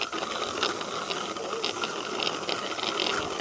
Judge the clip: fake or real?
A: real